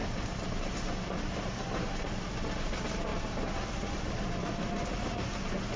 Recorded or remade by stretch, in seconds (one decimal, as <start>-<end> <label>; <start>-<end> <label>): 0.0-5.8 recorded